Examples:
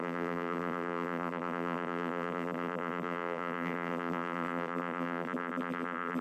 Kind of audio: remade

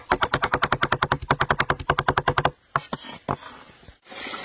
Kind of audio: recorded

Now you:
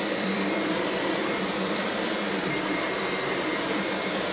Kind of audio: remade